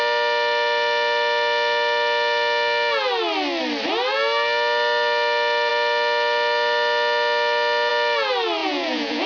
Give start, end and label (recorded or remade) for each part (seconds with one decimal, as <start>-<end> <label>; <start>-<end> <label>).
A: 0.0-8.6 recorded; 8.6-9.3 remade